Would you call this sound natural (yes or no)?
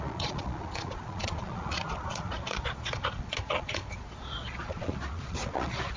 no